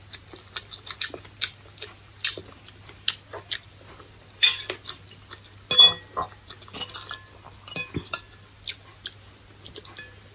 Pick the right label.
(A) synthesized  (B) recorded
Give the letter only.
B